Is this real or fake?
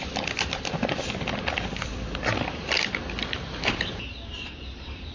real